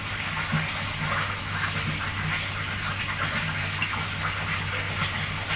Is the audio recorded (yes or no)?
yes